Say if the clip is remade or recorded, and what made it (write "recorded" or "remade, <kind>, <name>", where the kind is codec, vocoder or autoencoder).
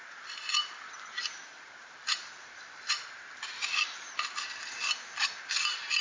remade, vocoder, BigVGAN v2